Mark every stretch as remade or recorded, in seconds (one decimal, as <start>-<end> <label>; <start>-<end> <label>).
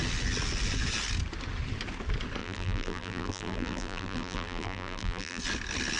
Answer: 0.0-2.4 recorded; 2.4-5.4 remade; 5.4-6.0 recorded